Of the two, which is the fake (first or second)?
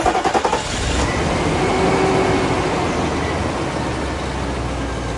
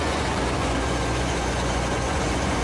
second